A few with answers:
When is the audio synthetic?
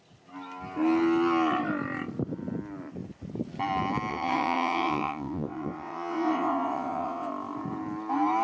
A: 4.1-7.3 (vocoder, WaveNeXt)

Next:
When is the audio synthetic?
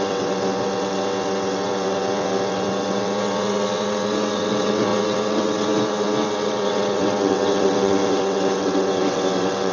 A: 0.0-9.7 (vocoder, WaveNeXt)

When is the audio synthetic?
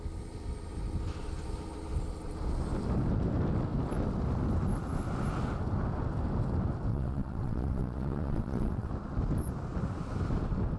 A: 6.9-8.9 (vocoder, WaveNeXt)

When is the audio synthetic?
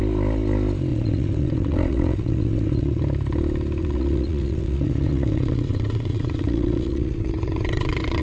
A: 0.9-3.0 (vocoder, WaveNeXt); 3.8-8.2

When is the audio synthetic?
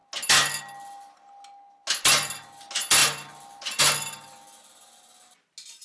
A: none